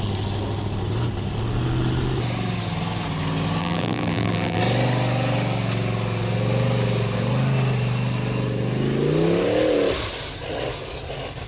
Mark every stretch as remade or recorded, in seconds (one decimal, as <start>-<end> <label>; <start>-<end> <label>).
0.0-3.6 recorded; 3.6-4.6 remade; 4.6-11.5 recorded